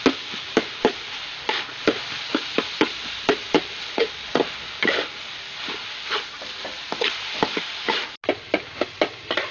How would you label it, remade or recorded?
recorded